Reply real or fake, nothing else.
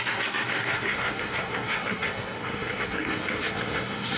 fake